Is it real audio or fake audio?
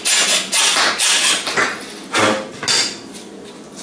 real